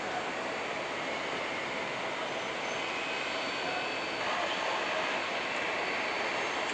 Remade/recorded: recorded